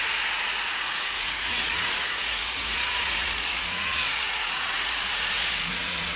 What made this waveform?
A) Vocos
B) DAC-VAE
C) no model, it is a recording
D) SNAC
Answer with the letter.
A